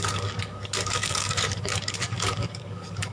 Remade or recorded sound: remade